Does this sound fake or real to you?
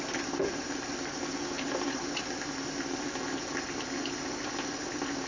real